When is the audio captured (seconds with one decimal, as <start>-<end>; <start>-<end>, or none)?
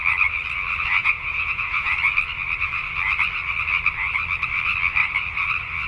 0.0-1.0; 1.9-5.9